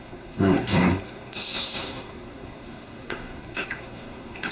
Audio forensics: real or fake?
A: fake